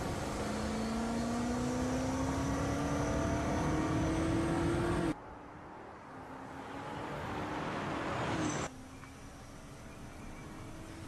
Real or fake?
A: real